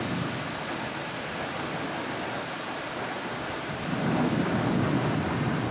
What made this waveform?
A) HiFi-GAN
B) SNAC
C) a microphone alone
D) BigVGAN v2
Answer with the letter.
C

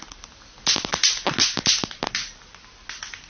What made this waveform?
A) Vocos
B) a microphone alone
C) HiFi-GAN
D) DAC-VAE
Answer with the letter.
B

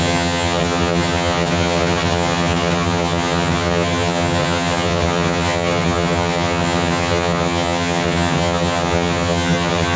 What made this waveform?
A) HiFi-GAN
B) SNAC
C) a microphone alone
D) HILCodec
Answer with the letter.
A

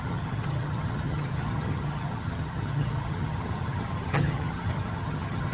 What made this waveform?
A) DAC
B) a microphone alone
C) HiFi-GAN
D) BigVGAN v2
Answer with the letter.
C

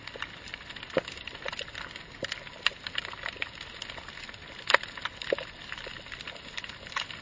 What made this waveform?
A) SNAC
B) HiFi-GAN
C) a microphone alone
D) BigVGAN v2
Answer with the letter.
C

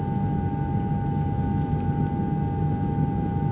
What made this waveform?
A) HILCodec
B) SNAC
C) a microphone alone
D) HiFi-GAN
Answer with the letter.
C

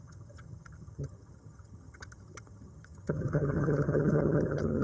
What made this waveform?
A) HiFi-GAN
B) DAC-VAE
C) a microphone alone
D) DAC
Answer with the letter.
A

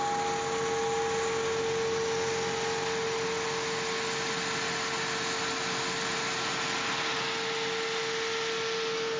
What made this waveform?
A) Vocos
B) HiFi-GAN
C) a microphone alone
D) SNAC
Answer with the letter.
C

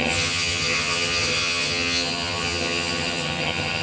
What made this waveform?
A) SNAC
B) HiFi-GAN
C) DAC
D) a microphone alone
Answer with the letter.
B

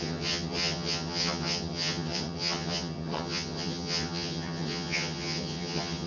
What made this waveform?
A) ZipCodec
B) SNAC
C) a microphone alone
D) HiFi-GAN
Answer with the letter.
D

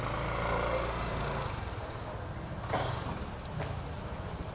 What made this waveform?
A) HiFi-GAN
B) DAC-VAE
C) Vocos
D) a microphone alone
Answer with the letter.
D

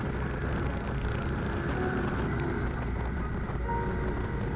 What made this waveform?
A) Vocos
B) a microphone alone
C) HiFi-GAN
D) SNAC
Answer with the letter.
B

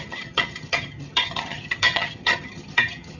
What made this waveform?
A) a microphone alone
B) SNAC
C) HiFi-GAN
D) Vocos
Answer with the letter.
C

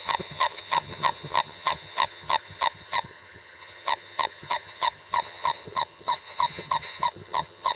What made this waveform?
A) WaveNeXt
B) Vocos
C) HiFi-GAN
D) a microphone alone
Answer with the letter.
C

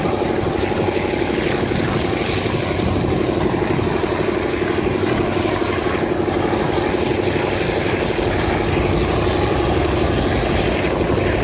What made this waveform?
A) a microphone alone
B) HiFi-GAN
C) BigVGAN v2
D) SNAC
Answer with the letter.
A